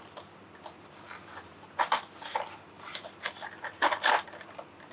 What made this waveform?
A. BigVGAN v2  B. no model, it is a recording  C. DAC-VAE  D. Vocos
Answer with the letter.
B